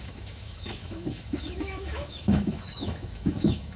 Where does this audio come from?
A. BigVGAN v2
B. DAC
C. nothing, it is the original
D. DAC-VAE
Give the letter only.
D